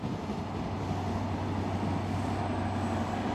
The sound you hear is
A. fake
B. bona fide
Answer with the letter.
B